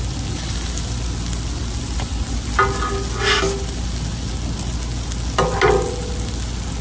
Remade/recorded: recorded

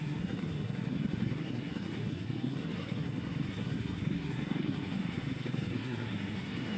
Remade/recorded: remade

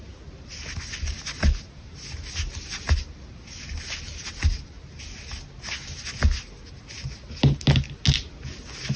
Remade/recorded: recorded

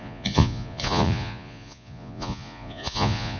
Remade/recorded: remade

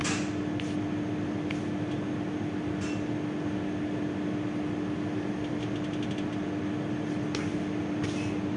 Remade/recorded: recorded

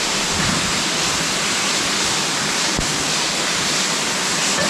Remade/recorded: recorded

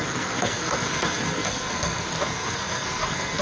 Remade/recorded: remade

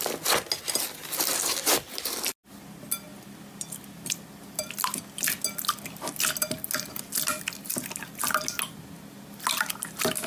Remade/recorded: recorded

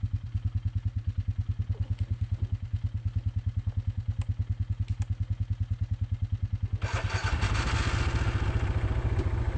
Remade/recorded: recorded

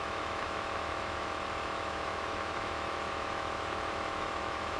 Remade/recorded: remade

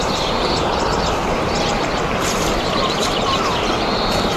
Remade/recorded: recorded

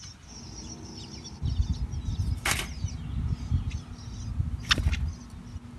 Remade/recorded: recorded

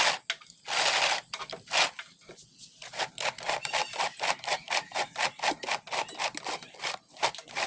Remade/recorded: recorded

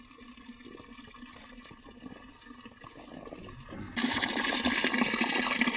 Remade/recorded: recorded